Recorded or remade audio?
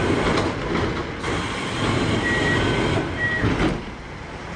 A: recorded